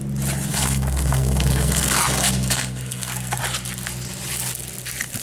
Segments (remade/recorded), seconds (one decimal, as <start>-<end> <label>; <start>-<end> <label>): 0.0-0.5 recorded; 0.5-3.4 remade; 3.4-5.2 recorded

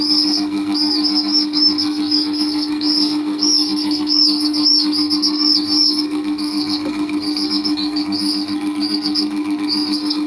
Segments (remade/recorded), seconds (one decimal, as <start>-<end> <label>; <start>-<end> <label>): 0.0-10.3 remade